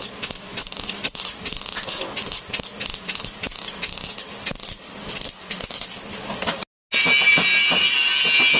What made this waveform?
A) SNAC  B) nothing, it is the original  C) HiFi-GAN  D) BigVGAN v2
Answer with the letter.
B